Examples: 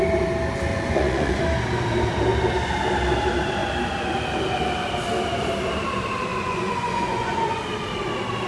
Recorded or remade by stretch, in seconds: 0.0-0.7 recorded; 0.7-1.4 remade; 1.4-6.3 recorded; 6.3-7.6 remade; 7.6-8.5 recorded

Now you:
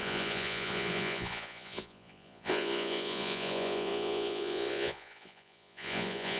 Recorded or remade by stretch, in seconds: 0.0-6.4 remade

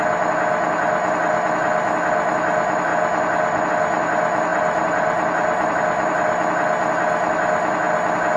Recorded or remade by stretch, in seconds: 0.0-4.5 recorded; 4.5-5.8 remade; 5.8-8.4 recorded

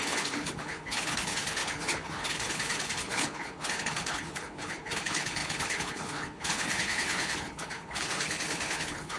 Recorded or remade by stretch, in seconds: 0.0-9.2 remade

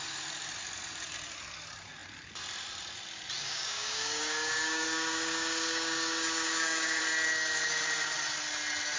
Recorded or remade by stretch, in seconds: 0.0-3.4 recorded; 3.4-7.0 remade; 7.0-9.0 recorded

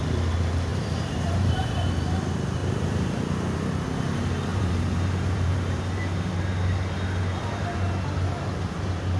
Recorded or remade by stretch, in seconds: 0.0-0.7 recorded; 0.7-1.9 remade; 1.9-2.6 recorded; 2.6-3.2 remade; 3.2-4.5 recorded; 4.5-6.3 remade; 6.3-9.2 recorded